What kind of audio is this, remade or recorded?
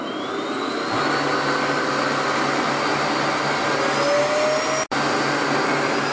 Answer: recorded